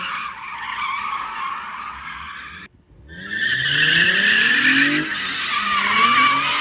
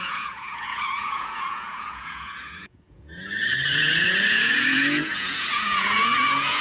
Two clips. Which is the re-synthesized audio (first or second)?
second